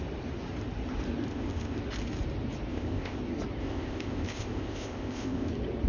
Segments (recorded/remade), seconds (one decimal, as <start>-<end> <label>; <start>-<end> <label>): 0.0-1.3 recorded; 1.3-1.8 remade; 1.8-2.7 recorded; 2.7-3.2 remade; 3.2-3.6 recorded; 3.6-5.5 remade; 5.5-5.9 recorded